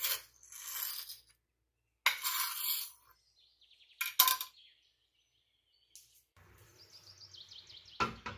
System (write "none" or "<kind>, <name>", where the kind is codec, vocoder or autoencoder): none